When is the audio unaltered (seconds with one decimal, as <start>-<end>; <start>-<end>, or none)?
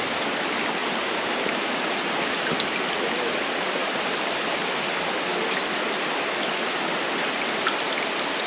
0.0-8.5